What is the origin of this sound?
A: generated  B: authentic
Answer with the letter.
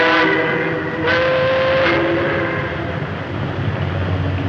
B